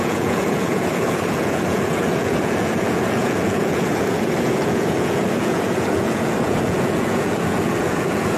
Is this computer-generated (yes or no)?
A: yes